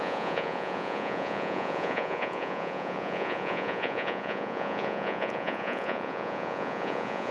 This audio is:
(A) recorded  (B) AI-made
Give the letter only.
B